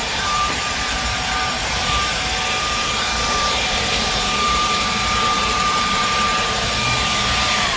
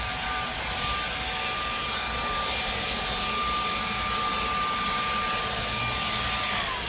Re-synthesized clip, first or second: first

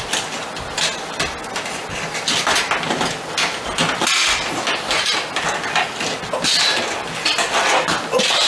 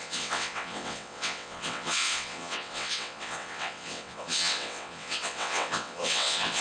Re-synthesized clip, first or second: second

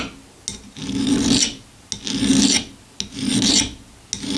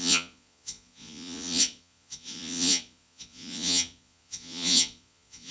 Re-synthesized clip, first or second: second